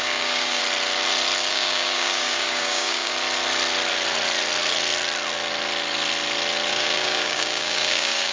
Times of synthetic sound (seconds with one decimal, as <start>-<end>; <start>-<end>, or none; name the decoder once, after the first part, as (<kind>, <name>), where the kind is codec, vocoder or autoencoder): 0.0-0.6 (codec, DAC); 1.5-3.1; 6.7-8.3